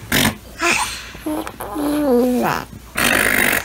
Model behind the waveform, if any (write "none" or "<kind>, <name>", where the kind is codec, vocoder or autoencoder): none